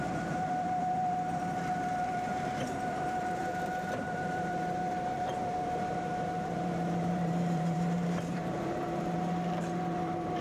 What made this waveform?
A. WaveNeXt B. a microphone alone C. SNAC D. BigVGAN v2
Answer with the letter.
D